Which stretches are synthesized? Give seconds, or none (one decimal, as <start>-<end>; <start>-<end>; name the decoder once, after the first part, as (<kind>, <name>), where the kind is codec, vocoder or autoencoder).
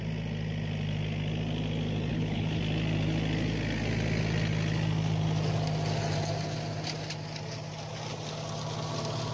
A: 2.1-2.6 (codec, HILCodec)